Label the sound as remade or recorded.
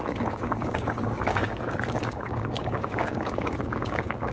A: remade